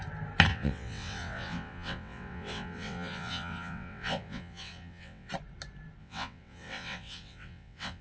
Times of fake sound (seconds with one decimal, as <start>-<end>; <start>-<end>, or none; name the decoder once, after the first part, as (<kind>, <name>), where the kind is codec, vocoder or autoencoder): 0.5-5.3 (vocoder, WaveNeXt); 6.0-8.0